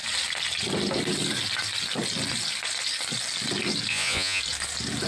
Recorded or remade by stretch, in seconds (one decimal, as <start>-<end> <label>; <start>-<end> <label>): 0.0-3.9 recorded; 3.9-4.4 remade; 4.4-5.1 recorded